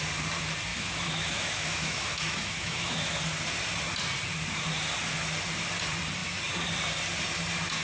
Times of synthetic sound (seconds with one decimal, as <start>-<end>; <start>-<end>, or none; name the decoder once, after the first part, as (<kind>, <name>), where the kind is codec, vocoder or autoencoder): 0.7-3.2 (autoencoder, DAC-VAE)